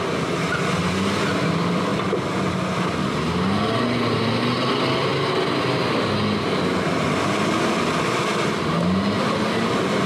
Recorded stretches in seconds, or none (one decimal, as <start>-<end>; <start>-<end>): 0.0-10.1